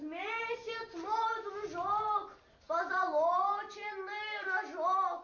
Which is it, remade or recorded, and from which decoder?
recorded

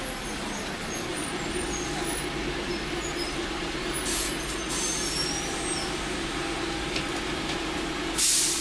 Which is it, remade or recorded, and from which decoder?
recorded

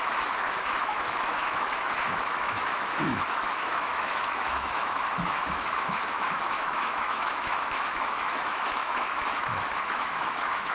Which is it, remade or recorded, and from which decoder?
remade, autoencoder, DAC-VAE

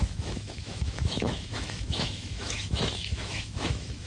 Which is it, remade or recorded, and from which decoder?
remade, autoencoder, DAC-VAE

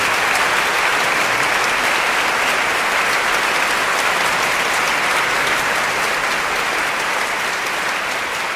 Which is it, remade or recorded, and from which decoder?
recorded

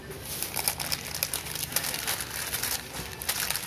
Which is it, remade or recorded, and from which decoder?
recorded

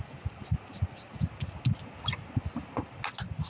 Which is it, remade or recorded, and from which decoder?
recorded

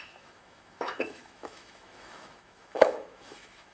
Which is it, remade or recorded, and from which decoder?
remade, autoencoder, DAC-VAE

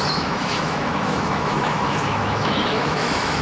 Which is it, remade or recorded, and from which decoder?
remade, autoencoder, DAC-VAE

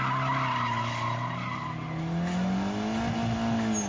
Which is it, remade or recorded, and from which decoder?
recorded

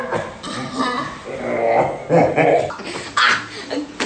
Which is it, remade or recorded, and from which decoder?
recorded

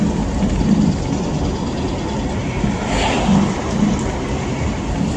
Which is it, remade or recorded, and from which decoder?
recorded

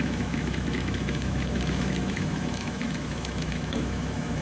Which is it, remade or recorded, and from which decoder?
remade, autoencoder, DAC-VAE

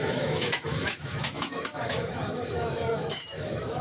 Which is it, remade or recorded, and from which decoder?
remade, autoencoder, DAC-VAE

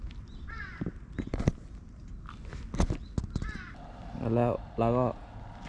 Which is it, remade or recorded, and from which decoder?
recorded